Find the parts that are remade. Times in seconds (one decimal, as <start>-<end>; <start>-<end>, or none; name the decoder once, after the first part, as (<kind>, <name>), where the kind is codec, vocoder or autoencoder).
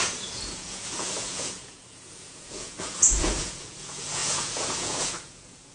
0.0-5.7 (vocoder, Vocos)